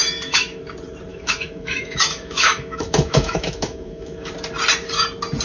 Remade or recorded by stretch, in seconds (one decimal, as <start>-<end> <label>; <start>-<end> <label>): 0.0-0.6 remade; 0.6-1.1 recorded; 1.1-4.3 remade; 4.3-5.4 recorded